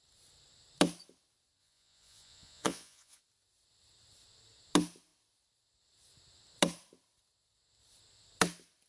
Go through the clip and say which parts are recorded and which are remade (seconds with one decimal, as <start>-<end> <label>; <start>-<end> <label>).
0.0-1.6 recorded; 1.6-3.2 remade; 3.2-8.9 recorded